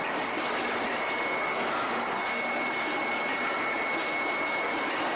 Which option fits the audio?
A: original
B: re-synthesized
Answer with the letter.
A